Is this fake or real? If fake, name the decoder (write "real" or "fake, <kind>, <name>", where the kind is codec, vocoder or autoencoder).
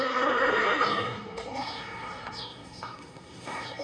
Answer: fake, codec, SNAC